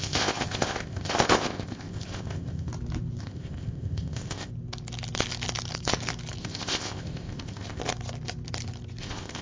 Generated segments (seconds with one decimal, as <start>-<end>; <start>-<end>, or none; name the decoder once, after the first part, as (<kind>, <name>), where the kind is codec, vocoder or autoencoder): 0.0-2.7 (codec, ZipCodec); 3.2-4.5; 6.4-7.8; 9.0-9.4